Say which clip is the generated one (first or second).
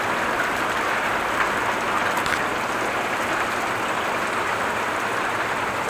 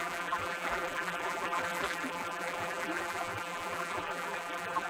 second